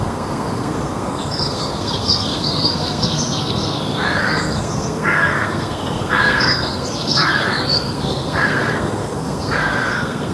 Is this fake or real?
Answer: fake